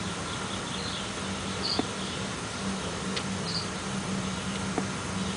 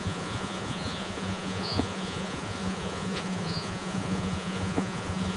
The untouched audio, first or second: first